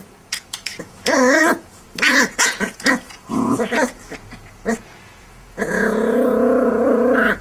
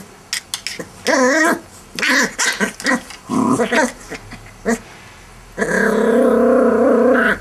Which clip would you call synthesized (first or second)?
first